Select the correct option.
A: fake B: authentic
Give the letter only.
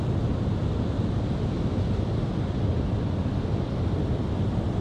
B